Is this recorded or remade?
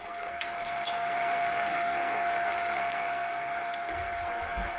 remade